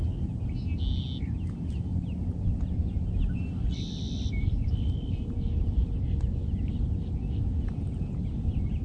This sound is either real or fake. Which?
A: real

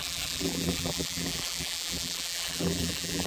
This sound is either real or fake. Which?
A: fake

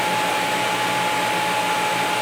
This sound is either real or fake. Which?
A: real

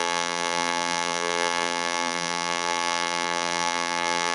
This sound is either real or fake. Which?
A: fake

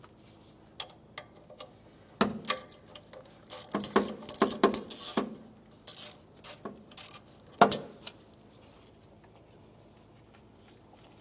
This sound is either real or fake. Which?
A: real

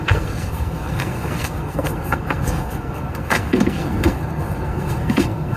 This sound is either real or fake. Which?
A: fake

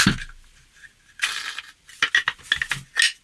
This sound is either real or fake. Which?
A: real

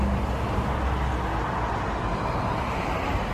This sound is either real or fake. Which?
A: real